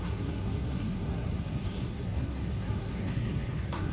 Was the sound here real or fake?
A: fake